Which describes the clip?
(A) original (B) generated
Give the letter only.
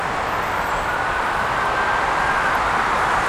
A